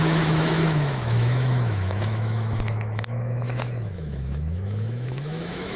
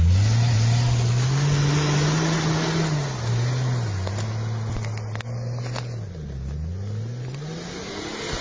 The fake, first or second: first